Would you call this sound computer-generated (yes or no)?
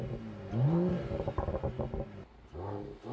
no